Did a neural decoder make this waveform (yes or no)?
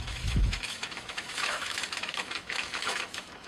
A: yes